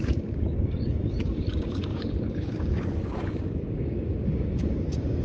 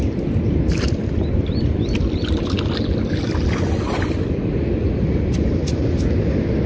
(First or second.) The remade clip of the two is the first